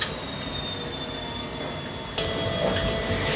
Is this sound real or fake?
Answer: real